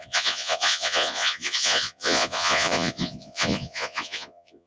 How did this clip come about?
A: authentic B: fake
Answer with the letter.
B